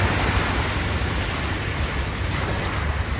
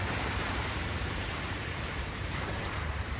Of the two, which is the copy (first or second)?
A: second